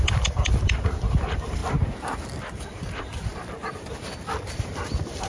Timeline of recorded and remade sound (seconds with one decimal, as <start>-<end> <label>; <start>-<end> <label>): 0.0-1.6 remade; 1.6-2.5 recorded; 2.5-3.3 remade; 3.3-4.5 recorded; 4.5-5.3 remade